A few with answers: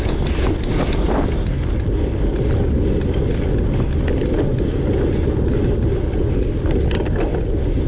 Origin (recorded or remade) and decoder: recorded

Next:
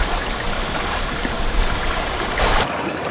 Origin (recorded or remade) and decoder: remade, vocoder, BigVGAN v2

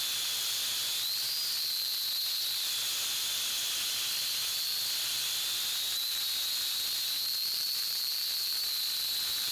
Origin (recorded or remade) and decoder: remade, vocoder, BigVGAN v2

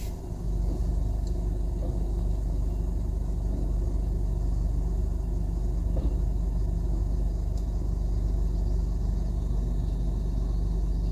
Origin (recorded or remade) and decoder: recorded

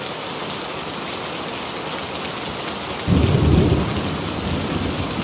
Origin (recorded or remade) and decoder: recorded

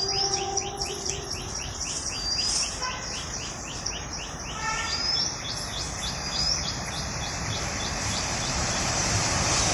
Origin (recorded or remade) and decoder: remade, vocoder, BigVGAN v2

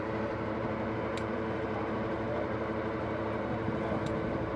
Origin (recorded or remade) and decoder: remade, vocoder, BigVGAN v2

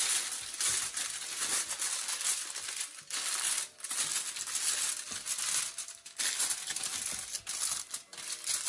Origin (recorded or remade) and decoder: recorded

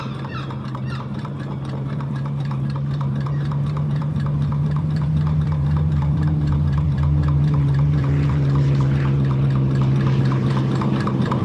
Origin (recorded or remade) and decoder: remade, vocoder, BigVGAN v2